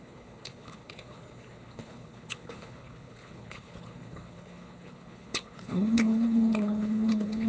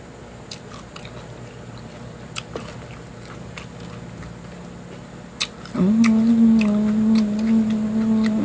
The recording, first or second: second